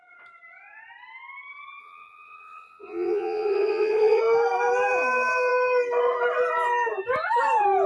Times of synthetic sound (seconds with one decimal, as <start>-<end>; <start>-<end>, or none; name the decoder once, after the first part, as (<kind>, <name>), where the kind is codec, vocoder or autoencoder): 1.8-4.2 (vocoder, Vocos)